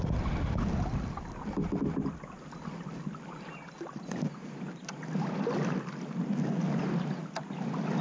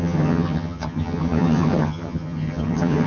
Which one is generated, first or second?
second